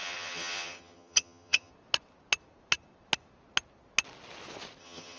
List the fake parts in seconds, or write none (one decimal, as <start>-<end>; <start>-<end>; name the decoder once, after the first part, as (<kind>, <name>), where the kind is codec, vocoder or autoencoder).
0.0-1.7 (vocoder, HiFi-GAN); 4.8-5.2

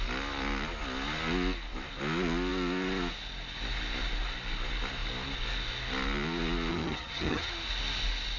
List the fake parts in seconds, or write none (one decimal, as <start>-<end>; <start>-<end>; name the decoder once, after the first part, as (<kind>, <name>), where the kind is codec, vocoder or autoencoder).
6.7-7.5 (vocoder, HiFi-GAN)